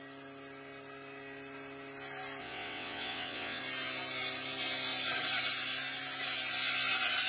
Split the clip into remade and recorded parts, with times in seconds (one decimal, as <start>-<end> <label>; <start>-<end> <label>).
0.0-2.4 recorded; 2.4-3.6 remade; 3.6-7.3 recorded